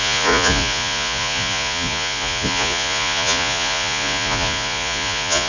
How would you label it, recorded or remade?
remade